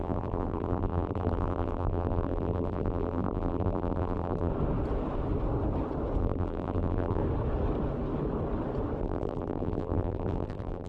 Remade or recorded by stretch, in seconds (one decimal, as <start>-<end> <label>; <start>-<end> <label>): 0.0-4.5 remade; 4.5-6.2 recorded; 6.2-7.2 remade; 7.2-9.0 recorded; 9.0-10.9 remade